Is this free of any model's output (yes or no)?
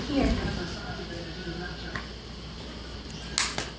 yes